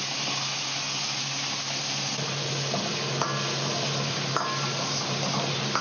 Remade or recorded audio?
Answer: recorded